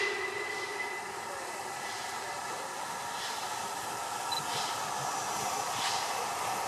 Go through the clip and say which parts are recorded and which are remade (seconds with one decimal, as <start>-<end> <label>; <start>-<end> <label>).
0.0-0.7 recorded; 0.7-4.7 remade; 4.7-6.7 recorded